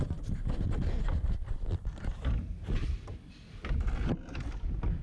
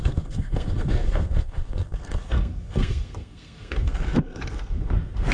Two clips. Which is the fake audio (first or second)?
second